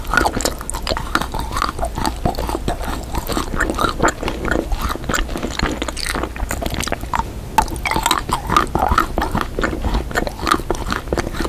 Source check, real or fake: real